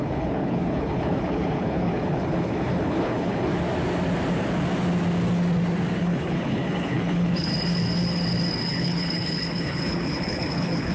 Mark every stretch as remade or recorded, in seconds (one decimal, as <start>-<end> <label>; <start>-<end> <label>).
0.0-3.5 remade; 3.5-6.0 recorded; 6.0-7.5 remade; 7.5-8.6 recorded; 8.6-10.9 remade

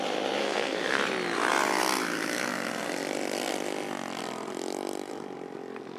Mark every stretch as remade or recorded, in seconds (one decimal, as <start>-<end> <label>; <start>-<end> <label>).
0.0-0.4 recorded; 0.4-1.0 remade; 1.0-6.0 recorded

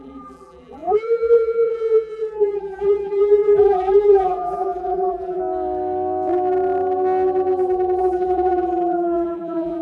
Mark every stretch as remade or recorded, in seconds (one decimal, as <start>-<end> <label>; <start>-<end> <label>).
0.0-5.4 remade; 5.4-8.0 recorded; 8.0-9.8 remade

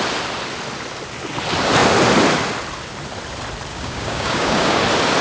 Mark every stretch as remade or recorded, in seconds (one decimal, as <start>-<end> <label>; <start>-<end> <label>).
0.0-3.7 recorded; 3.7-4.8 remade; 4.8-5.2 recorded